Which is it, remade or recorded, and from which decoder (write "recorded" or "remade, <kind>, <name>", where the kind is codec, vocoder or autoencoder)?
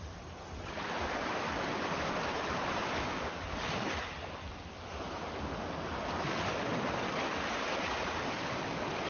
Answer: recorded